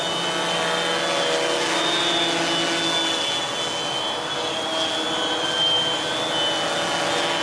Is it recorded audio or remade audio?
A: recorded